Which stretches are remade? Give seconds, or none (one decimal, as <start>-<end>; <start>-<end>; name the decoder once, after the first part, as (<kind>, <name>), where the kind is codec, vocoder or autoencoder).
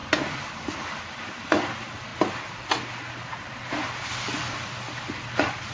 0.0-2.1 (vocoder, BigVGAN v2); 3.5-5.7